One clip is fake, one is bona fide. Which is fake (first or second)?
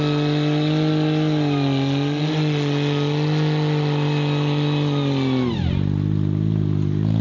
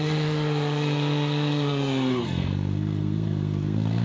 second